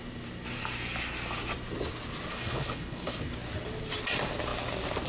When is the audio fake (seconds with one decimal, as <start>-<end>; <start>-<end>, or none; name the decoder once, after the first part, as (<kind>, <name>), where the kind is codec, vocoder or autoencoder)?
2.3-3.2 (codec, HILCodec)